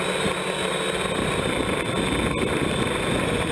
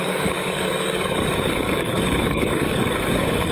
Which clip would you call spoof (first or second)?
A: second